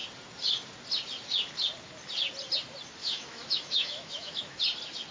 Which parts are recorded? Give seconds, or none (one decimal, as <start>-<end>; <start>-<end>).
0.0-3.0; 4.6-5.1